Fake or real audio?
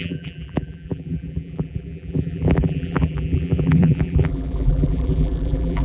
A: fake